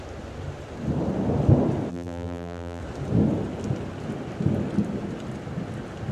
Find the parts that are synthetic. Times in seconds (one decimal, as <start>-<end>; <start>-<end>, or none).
1.9-2.8